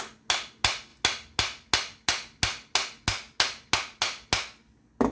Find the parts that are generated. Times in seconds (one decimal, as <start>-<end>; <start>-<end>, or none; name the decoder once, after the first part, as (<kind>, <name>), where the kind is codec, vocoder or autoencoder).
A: none